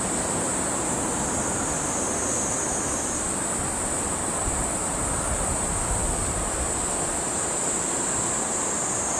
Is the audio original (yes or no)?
no